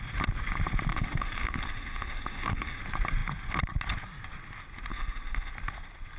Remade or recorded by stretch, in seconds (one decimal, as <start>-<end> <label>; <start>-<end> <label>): 0.0-0.9 recorded; 0.9-2.8 remade; 2.8-4.9 recorded; 4.9-5.5 remade; 5.5-6.2 recorded